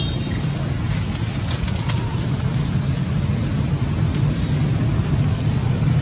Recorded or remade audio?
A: recorded